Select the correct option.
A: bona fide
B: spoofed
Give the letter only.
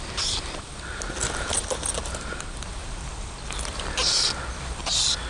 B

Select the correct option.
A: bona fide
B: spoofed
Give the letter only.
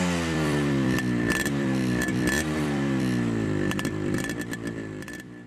B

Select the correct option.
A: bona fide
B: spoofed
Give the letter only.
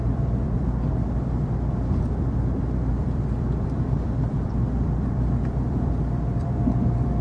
B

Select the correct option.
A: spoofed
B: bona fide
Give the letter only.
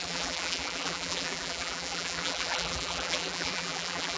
A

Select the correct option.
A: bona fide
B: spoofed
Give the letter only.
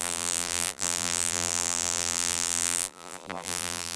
B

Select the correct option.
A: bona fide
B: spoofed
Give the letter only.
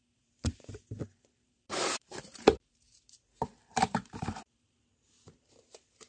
B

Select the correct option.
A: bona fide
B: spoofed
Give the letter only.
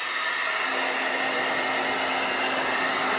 A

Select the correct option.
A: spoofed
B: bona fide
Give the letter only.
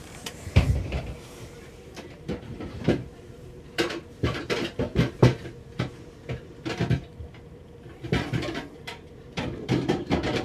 A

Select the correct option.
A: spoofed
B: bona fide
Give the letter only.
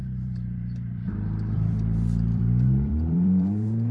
A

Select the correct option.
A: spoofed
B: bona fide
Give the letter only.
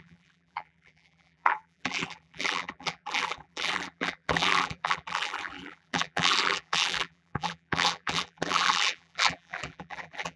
A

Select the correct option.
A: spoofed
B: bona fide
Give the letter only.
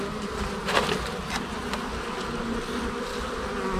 B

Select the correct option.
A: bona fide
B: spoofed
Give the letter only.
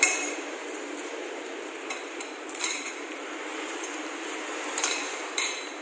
B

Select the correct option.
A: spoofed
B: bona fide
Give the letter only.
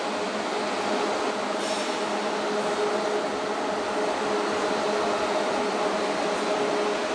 B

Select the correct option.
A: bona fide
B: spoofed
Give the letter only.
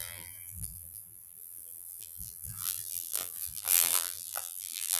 B